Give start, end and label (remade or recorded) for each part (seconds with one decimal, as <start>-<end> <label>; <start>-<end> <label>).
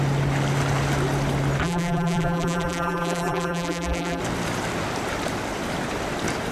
0.0-1.6 recorded; 1.6-4.2 remade; 4.2-6.5 recorded